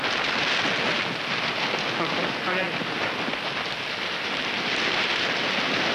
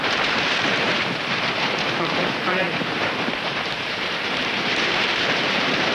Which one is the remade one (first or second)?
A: second